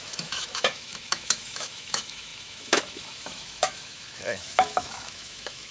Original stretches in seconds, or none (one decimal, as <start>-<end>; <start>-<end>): none